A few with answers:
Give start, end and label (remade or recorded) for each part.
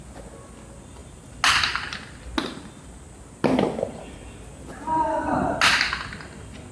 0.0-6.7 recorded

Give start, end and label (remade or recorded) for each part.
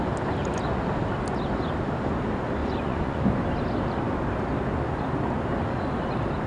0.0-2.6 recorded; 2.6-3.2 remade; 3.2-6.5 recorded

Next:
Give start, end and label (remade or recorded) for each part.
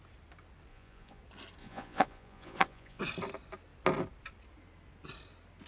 0.0-0.7 recorded; 0.7-1.2 remade; 1.2-1.6 recorded; 1.6-3.0 remade; 3.0-5.7 recorded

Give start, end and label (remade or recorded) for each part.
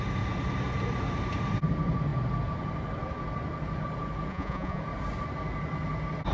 0.0-4.3 recorded; 4.3-4.8 remade; 4.8-6.3 recorded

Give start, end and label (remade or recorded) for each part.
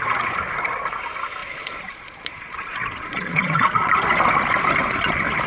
0.0-1.4 recorded; 1.4-3.9 remade; 3.9-5.5 recorded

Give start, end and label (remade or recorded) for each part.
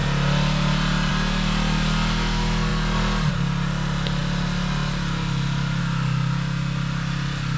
0.0-7.6 recorded